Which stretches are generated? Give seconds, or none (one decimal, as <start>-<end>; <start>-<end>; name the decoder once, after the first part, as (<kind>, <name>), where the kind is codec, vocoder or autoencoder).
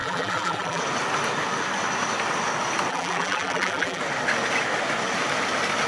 0.0-0.8 (vocoder, BigVGAN v2); 2.9-4.0